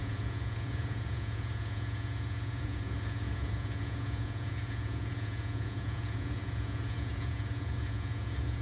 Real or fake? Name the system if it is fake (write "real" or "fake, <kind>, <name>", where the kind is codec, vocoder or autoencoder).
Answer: fake, vocoder, Vocos